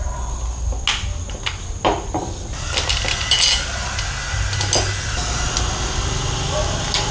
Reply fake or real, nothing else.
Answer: real